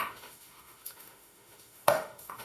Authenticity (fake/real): fake